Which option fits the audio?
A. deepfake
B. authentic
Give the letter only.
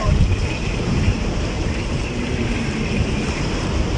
A